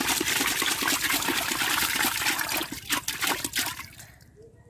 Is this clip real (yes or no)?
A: yes